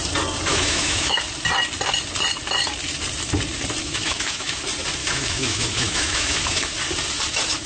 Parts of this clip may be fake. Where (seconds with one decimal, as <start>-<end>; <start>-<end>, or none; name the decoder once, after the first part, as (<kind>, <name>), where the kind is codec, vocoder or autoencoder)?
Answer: 0.5-1.2 (autoencoder, DAC-VAE); 3.8-4.6; 5.0-6.7